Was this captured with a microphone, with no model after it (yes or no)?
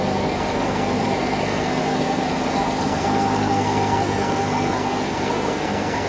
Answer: no